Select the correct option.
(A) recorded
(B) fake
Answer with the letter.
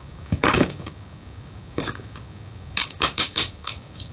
B